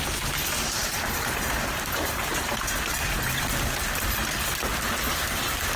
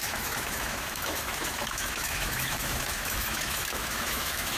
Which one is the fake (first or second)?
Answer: second